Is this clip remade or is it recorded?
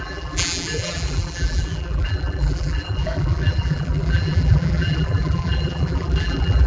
remade